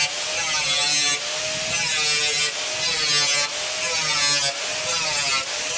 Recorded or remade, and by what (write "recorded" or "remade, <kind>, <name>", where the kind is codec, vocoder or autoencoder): recorded